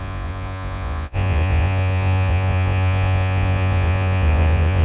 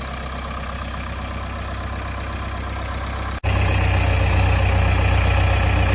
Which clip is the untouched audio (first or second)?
second